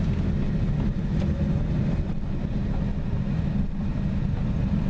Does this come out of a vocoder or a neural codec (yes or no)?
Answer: no